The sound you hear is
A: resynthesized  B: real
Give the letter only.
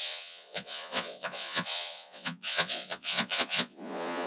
A